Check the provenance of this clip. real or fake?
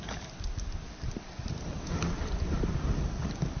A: real